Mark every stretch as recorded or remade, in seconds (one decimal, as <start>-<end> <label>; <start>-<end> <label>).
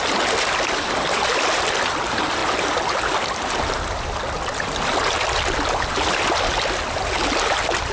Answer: 0.0-7.9 recorded